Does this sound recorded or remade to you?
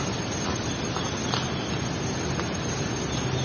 recorded